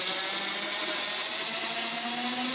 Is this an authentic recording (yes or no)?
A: yes